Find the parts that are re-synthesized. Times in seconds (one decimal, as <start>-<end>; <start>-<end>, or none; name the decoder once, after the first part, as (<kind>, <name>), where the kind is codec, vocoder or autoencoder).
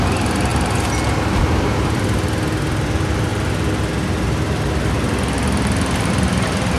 0.0-0.5 (vocoder, BigVGAN v2); 1.4-3.3; 6.1-6.8